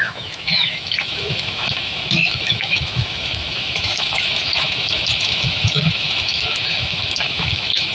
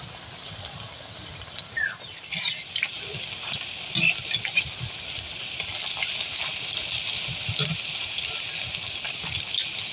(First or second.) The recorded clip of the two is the second